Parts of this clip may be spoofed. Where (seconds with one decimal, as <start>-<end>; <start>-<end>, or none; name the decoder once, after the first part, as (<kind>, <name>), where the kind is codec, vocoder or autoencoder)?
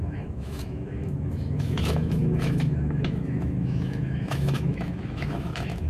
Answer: 0.0-5.9 (autoencoder, DAC-VAE)